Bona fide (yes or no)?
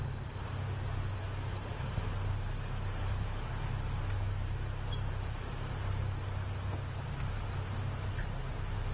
yes